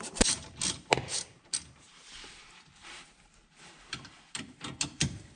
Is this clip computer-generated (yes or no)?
yes